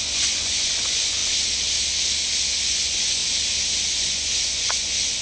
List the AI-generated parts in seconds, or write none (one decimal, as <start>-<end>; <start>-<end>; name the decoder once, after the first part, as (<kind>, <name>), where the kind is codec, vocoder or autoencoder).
0.0-1.2 (vocoder, Vocos); 2.6-3.2; 3.9-5.2